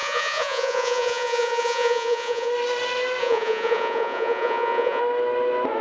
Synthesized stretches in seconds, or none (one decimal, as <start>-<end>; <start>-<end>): 0.0-2.5; 3.2-5.0